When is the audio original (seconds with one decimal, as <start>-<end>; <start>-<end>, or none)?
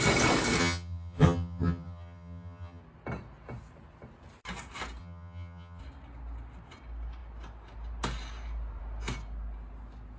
0.0-0.6; 2.8-5.0; 5.8-10.2